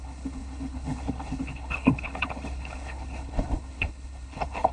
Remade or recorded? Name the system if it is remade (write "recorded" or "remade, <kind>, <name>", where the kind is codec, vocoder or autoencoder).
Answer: remade, codec, HILCodec